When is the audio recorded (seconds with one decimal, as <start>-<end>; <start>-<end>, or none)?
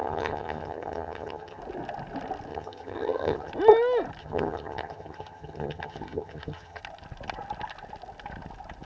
1.6-2.5; 3.5-4.2; 6.8-8.8